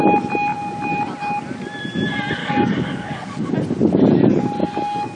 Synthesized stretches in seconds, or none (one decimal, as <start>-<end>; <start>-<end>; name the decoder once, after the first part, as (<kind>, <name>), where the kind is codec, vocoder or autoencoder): 2.4-3.5 (codec, DAC); 4.6-5.2